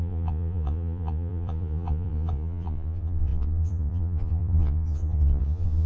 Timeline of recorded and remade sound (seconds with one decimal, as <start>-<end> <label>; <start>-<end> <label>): 0.0-5.9 remade